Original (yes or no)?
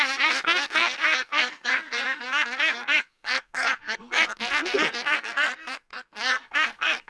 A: no